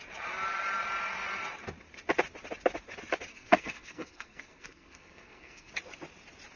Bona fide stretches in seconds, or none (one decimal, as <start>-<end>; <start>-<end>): 0.0-3.3; 5.7-6.6